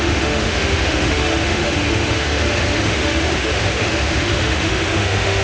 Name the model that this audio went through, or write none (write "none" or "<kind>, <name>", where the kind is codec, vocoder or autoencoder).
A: autoencoder, DAC-VAE